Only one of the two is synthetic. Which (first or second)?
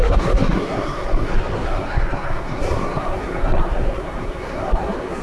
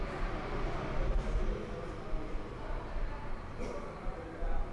first